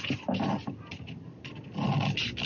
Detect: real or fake real